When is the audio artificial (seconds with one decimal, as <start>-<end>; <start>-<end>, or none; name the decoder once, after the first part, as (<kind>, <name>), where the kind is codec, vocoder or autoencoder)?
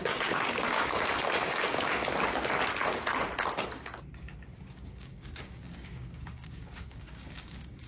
0.0-2.0 (codec, DAC); 4.7-7.9